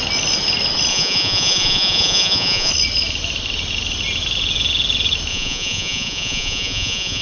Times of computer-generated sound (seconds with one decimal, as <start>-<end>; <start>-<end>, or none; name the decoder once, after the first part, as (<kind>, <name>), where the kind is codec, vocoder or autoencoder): 0.9-2.7 (vocoder, Vocos); 5.3-7.2